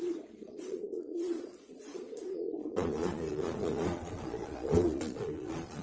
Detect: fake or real fake